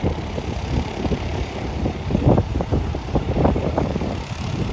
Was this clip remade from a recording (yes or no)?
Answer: yes